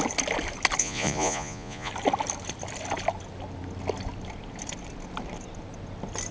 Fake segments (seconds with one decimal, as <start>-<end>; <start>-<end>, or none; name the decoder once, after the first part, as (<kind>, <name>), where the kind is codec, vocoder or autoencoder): 0.8-1.9 (vocoder, Vocos)